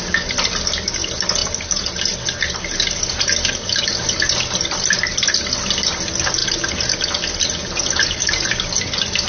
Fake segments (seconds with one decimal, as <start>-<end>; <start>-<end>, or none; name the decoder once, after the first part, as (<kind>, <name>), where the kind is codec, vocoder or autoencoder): none